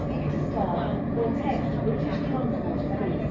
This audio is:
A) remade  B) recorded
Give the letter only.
B